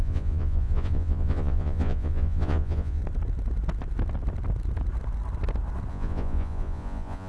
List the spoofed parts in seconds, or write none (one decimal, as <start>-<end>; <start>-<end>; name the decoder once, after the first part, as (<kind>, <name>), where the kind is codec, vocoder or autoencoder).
0.0-3.0 (vocoder, Vocos); 5.9-7.3